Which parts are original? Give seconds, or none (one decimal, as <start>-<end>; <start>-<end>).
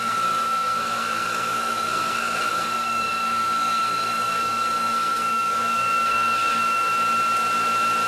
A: 6.9-8.1